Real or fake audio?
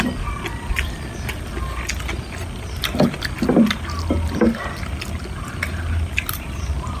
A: real